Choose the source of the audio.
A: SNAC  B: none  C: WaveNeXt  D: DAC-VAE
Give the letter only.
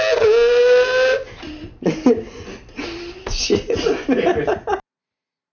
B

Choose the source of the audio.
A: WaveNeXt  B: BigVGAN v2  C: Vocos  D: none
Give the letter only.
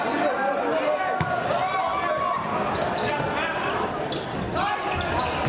D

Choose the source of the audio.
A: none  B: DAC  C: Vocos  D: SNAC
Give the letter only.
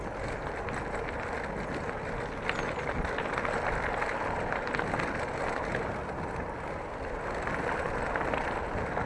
A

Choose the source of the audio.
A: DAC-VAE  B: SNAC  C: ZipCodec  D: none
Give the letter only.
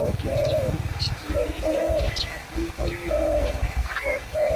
B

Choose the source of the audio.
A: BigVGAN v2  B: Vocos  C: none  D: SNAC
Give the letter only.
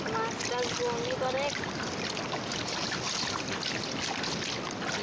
C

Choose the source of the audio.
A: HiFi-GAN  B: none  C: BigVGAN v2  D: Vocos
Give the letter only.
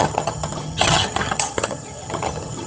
A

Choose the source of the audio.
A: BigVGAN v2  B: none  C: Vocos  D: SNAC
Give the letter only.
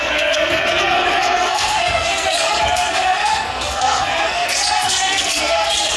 D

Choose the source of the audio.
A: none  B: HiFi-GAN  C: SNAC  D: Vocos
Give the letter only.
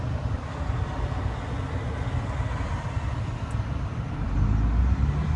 A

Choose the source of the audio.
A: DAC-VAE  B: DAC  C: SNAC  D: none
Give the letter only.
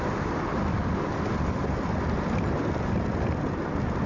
D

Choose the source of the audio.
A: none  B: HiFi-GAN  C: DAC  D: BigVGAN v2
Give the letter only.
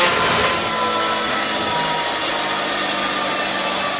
A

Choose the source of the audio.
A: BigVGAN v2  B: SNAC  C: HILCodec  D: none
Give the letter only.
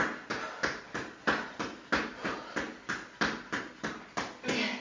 D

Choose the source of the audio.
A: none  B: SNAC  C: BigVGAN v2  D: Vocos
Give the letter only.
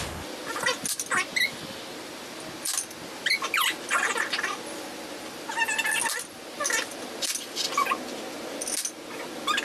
A